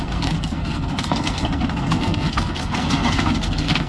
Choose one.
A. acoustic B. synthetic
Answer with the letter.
B